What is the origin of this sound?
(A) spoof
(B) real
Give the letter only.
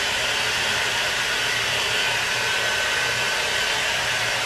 B